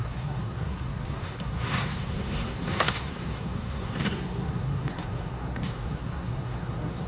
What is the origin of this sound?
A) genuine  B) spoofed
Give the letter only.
B